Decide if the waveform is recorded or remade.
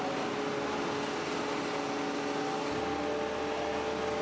recorded